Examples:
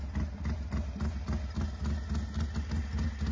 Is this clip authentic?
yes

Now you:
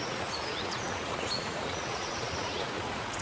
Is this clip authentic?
no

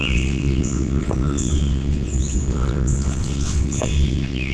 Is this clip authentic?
no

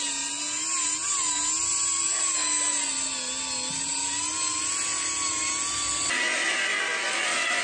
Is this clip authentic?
yes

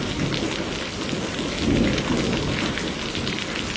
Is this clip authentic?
yes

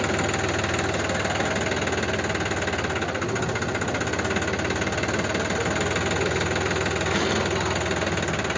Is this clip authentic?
yes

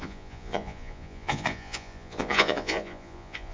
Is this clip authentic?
no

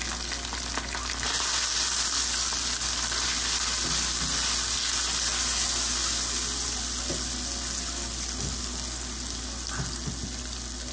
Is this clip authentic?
yes